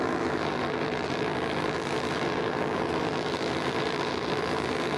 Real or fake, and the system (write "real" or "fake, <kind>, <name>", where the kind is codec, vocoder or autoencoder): fake, vocoder, BigVGAN v2